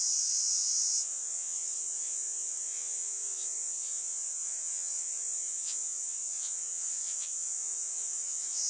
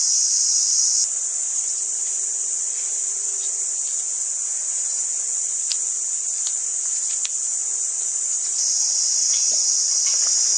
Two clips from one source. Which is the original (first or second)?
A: second